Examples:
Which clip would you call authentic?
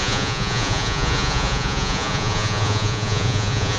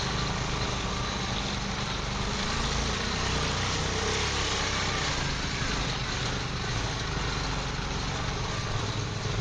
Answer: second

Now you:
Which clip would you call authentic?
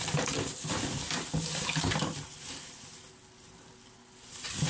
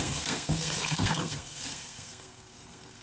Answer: first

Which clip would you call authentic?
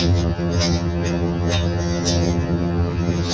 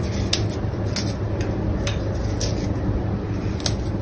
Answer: second